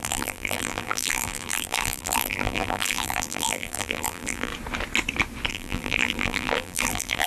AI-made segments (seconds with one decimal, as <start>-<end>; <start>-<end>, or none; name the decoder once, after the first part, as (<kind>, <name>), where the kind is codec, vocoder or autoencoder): 0.0-4.5 (vocoder, BigVGAN v2); 5.5-7.3